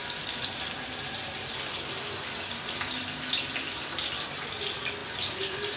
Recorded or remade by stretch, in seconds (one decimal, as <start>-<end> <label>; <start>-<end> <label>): 0.0-5.8 recorded